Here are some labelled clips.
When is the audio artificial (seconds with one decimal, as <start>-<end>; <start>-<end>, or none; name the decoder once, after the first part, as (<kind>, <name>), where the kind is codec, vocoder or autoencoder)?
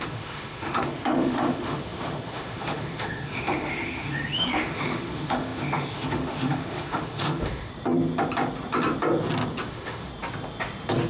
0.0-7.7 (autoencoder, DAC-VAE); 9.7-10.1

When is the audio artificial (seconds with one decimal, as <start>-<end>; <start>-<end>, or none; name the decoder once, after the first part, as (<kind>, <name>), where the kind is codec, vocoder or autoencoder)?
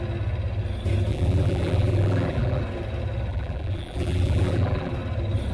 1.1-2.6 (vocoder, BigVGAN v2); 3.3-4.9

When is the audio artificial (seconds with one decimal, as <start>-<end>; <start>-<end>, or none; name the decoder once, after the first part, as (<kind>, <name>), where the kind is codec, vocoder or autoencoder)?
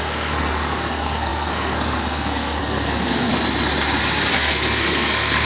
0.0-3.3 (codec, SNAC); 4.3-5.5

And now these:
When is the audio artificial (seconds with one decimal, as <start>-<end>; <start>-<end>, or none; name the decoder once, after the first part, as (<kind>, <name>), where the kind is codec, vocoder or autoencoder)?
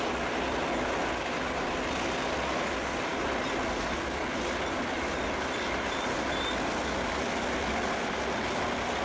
none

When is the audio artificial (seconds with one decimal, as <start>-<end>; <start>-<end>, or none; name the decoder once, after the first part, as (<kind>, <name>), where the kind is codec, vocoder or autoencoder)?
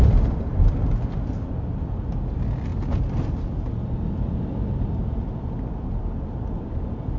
none